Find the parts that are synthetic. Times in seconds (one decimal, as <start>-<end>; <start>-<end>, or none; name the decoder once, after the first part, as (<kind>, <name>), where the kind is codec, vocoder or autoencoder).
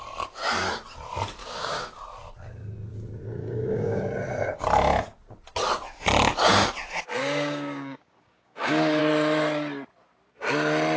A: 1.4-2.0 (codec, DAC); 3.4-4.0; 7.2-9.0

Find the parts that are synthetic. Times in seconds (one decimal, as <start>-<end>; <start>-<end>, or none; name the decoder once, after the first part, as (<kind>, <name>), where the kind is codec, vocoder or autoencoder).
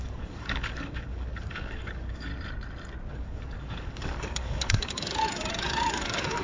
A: 0.0-2.3 (codec, DAC); 3.1-5.2; 5.9-6.4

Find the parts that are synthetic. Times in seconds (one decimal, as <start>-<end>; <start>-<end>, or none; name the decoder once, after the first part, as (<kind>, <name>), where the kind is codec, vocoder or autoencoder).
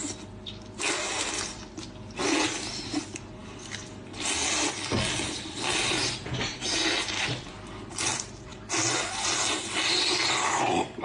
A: none